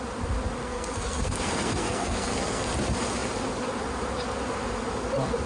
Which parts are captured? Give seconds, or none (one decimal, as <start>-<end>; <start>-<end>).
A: 0.0-0.6; 2.7-5.5